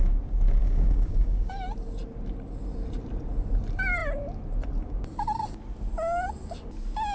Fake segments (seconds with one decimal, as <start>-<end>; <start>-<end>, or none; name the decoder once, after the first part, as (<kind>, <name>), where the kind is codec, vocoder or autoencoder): 0.6-1.5 (codec, DAC)